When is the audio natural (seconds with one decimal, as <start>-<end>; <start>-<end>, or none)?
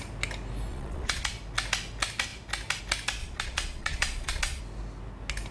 0.0-0.7; 1.3-3.2; 4.6-5.5